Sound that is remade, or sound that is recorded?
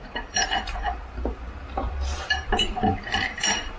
remade